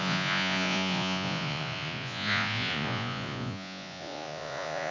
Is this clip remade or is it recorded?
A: remade